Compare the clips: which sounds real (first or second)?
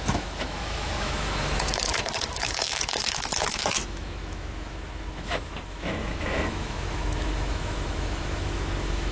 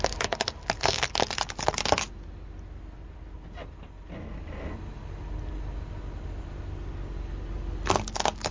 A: second